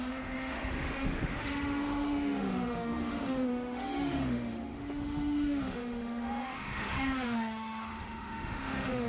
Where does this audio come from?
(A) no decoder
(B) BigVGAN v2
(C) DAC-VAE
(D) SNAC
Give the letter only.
C